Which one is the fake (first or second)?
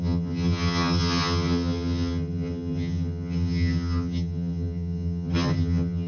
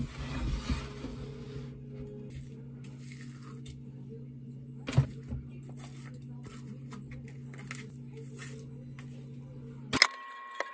first